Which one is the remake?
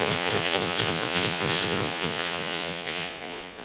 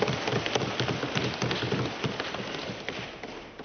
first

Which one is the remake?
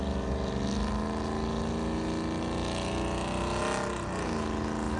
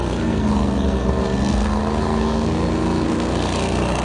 second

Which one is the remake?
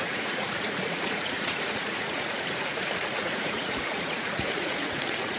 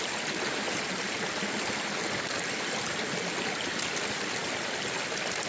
first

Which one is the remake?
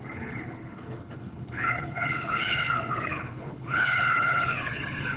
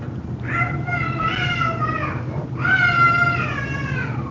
first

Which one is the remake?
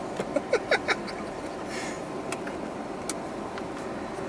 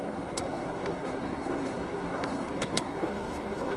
second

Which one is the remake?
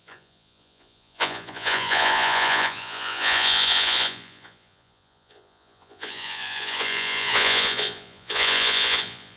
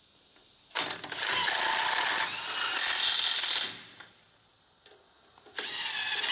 first